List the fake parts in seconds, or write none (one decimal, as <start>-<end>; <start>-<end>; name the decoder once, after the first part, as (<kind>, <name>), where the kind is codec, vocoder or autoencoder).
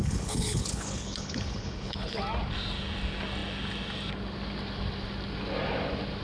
0.0-2.2 (codec, HILCodec)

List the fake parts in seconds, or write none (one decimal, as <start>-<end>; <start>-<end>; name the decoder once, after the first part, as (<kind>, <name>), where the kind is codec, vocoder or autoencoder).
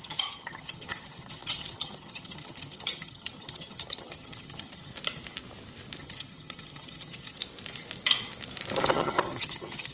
0.0-4.9 (vocoder, HiFi-GAN); 6.0-7.4; 8.9-9.9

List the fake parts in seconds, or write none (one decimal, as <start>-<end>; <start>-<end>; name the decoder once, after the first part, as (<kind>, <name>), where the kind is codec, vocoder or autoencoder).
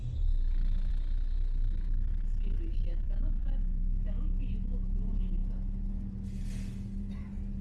2.7-3.6 (vocoder, BigVGAN v2)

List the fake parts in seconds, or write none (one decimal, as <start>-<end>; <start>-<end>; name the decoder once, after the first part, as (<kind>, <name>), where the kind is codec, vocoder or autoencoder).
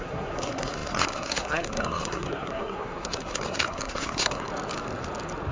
0.0-4.5 (codec, SNAC)